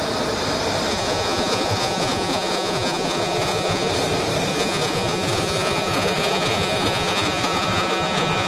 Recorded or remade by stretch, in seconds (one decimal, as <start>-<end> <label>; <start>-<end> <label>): 0.0-0.9 recorded; 0.9-3.9 remade; 3.9-4.5 recorded; 4.5-8.5 remade